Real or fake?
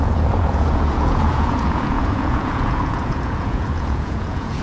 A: fake